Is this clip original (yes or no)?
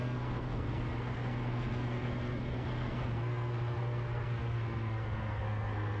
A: no